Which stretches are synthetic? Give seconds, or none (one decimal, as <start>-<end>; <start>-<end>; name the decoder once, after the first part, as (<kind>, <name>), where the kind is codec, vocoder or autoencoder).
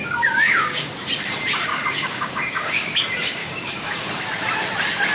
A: 0.0-0.9 (codec, DAC); 1.7-2.9; 3.4-4.1